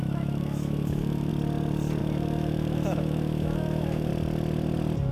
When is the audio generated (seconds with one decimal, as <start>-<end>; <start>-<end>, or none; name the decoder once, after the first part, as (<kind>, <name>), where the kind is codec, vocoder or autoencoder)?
0.0-1.3 (autoencoder, DAC-VAE); 2.0-4.1